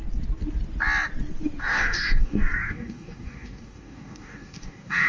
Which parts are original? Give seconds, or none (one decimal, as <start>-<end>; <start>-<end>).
0.0-1.6